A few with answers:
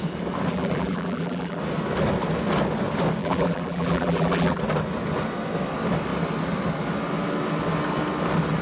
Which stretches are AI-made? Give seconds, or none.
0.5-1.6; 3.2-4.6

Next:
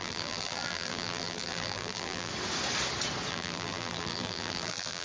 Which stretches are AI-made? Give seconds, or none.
0.0-2.3; 3.3-5.0